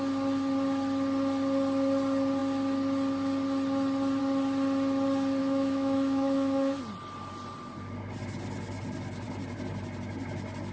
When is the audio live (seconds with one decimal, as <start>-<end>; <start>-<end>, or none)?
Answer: 0.0-5.4; 6.8-10.7